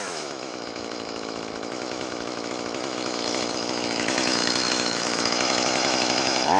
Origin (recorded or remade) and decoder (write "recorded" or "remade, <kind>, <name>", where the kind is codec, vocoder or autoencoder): remade, autoencoder, DAC-VAE